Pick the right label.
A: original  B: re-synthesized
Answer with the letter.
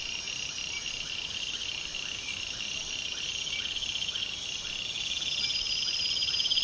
A